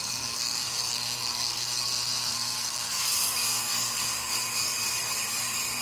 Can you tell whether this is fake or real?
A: fake